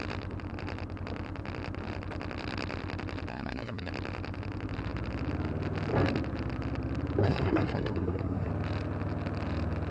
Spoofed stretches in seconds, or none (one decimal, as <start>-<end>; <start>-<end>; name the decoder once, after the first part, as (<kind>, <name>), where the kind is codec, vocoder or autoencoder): 3.3-3.9 (codec, SNAC); 7.2-8.5